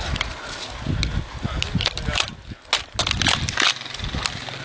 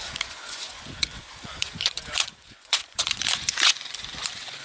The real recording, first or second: first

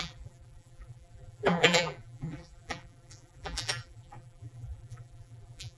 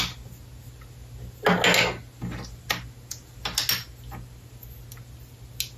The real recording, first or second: second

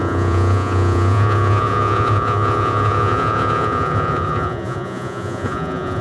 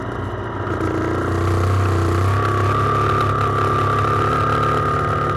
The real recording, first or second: second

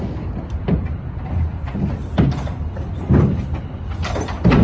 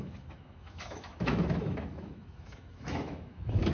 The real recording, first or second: first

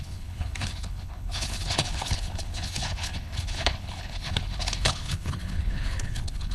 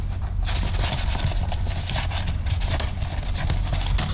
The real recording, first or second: second